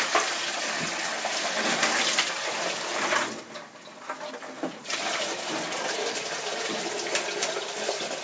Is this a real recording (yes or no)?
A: yes